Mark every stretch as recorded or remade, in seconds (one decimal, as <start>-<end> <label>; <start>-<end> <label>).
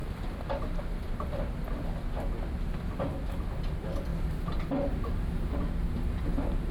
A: 0.0-4.1 recorded; 4.1-5.1 remade; 5.1-6.7 recorded